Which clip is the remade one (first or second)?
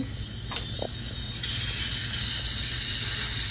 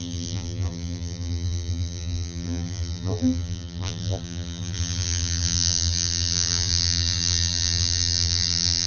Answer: second